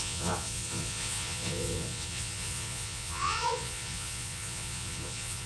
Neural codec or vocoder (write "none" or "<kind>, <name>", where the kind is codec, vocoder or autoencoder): vocoder, Vocos